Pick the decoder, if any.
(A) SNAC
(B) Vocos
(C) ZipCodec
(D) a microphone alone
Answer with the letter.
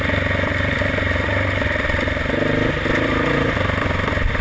D